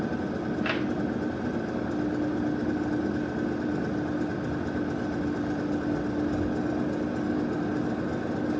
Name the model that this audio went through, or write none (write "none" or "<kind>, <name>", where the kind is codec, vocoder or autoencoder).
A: none